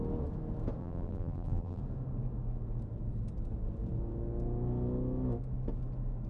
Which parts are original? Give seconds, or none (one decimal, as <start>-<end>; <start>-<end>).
0.0-0.8; 1.8-6.3